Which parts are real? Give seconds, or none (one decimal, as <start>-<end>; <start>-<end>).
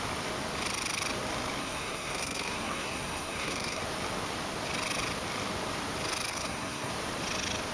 0.0-1.6; 3.8-6.3; 6.9-7.7